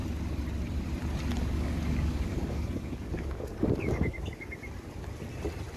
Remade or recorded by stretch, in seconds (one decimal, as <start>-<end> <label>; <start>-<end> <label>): 0.0-1.4 recorded; 1.4-4.6 remade; 4.6-5.8 recorded